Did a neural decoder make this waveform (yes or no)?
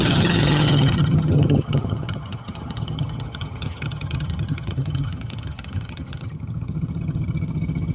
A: yes